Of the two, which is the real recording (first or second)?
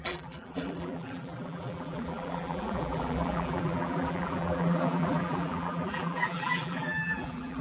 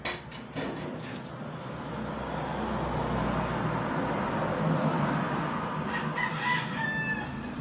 second